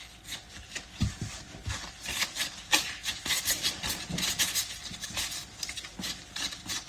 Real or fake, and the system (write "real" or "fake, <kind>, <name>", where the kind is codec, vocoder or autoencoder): fake, vocoder, BigVGAN v2